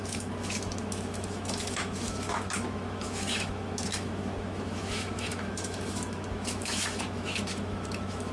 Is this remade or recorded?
remade